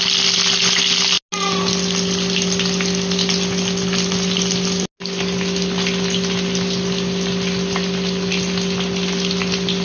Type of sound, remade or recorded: recorded